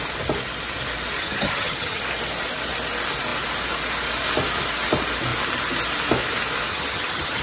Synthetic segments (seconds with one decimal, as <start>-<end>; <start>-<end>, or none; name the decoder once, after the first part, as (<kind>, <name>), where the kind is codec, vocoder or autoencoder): 1.2-2.0 (vocoder, HiFi-GAN); 6.7-7.4